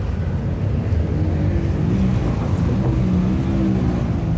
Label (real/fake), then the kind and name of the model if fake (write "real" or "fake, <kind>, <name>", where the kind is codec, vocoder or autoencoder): real